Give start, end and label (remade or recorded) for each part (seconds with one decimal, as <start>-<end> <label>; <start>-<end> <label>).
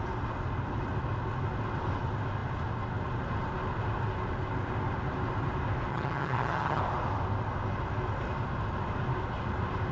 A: 0.0-5.9 recorded; 5.9-6.8 remade; 6.8-9.9 recorded